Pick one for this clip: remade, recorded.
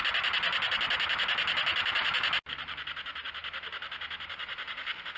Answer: recorded